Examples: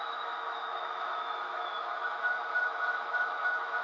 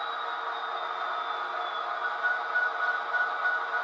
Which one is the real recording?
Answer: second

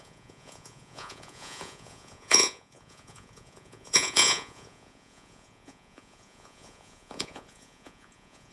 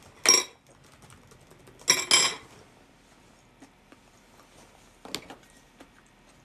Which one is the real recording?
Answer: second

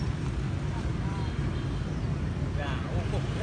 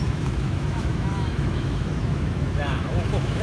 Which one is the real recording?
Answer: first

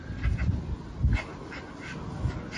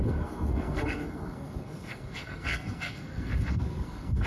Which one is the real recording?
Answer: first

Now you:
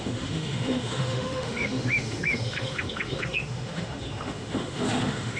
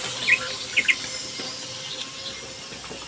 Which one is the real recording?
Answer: second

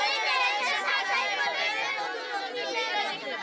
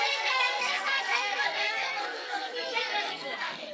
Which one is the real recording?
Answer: first